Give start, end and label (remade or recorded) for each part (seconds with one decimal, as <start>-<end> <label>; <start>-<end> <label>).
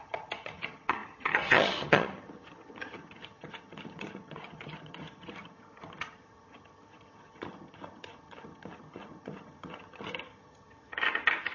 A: 0.0-11.5 remade